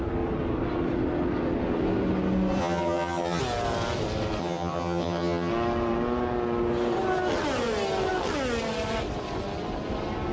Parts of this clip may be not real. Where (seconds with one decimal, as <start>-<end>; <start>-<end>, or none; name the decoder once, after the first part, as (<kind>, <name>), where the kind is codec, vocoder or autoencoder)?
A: 2.6-3.4 (vocoder, HiFi-GAN); 4.4-5.5